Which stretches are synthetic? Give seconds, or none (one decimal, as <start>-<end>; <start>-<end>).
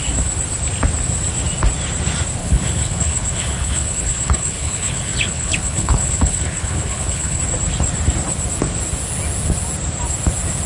2.4-7.4